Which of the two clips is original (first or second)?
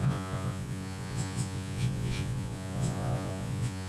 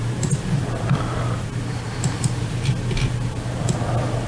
second